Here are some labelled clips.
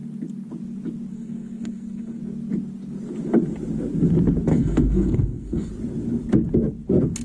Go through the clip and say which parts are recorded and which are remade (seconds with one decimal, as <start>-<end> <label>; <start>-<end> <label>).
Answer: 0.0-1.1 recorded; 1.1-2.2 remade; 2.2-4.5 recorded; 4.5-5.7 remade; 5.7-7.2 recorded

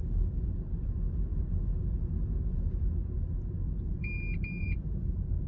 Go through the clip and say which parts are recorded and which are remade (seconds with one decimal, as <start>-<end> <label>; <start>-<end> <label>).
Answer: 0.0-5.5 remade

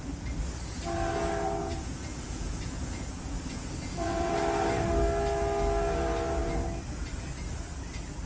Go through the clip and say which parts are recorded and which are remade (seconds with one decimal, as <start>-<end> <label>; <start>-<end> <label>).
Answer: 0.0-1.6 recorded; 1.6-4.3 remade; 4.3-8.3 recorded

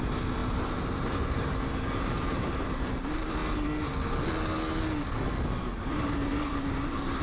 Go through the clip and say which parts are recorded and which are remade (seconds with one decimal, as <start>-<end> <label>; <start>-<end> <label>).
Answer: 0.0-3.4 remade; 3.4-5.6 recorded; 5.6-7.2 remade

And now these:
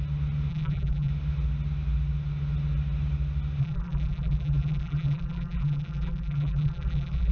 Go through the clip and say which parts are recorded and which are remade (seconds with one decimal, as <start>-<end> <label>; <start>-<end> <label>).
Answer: 0.0-0.5 recorded; 0.5-1.1 remade; 1.1-3.6 recorded; 3.6-7.3 remade

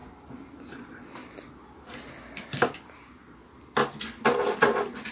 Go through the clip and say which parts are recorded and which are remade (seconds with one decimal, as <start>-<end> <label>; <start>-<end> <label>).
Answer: 0.0-5.1 recorded

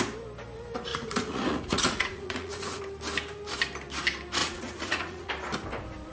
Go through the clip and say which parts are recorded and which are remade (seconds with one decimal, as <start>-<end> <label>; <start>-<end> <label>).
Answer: 0.0-0.9 recorded; 0.9-2.8 remade; 2.8-4.4 recorded; 4.4-5.3 remade; 5.3-6.1 recorded